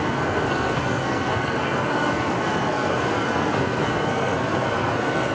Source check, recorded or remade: remade